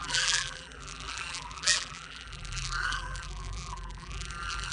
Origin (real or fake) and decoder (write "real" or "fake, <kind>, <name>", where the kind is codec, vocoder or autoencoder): fake, vocoder, BigVGAN v2